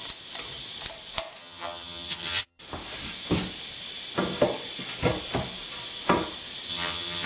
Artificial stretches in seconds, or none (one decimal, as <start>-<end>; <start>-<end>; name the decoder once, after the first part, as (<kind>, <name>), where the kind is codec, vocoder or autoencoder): 1.4-2.6 (vocoder, HiFi-GAN); 6.7-7.3